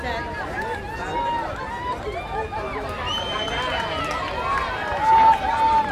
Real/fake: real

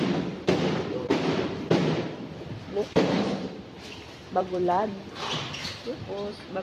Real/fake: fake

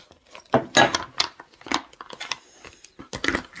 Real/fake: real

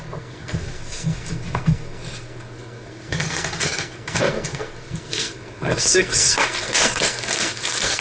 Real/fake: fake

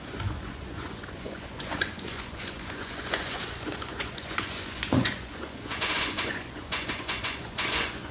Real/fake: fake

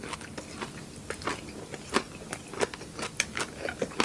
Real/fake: real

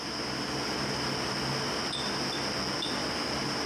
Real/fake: real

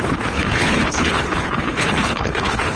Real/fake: fake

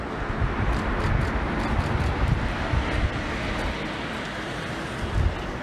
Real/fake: real